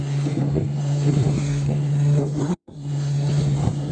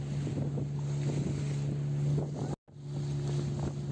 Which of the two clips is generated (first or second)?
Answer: first